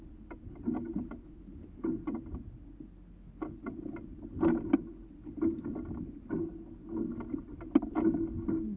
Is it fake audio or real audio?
real